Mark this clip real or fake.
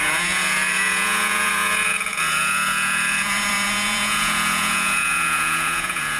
fake